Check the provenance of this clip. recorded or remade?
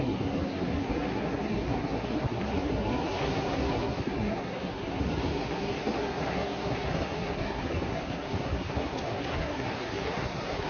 remade